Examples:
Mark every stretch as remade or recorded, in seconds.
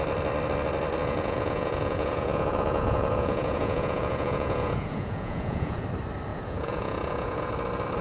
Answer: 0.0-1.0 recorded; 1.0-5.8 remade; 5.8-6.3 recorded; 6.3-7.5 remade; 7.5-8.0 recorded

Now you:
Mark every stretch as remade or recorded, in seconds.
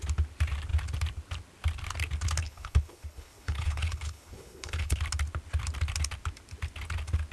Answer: 0.0-2.4 recorded; 2.4-5.0 remade; 5.0-7.3 recorded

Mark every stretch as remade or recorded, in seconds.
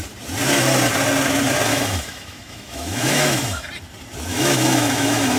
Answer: 0.0-1.7 recorded; 1.7-3.7 remade; 3.7-4.3 recorded; 4.3-5.4 remade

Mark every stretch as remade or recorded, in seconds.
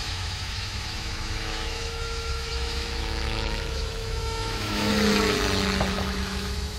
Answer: 0.0-4.9 remade; 4.9-5.9 recorded; 5.9-6.8 remade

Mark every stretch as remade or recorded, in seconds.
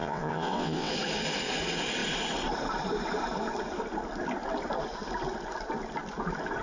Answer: 0.0-0.9 remade; 0.9-6.6 recorded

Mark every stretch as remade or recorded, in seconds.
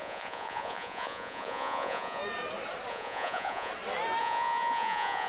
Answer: 0.0-2.2 remade; 2.2-2.9 recorded; 2.9-3.7 remade; 3.7-4.2 recorded; 4.2-5.3 remade